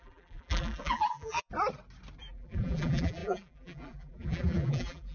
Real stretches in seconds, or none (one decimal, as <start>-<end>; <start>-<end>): 1.5-2.2